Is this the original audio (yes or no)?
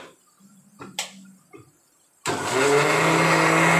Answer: yes